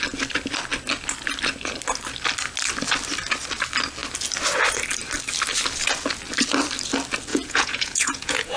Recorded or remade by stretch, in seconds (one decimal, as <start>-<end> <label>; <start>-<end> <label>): 0.0-7.3 recorded; 7.3-8.6 remade